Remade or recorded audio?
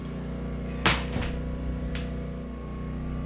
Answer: recorded